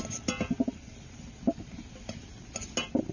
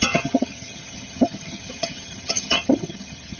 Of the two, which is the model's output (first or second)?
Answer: second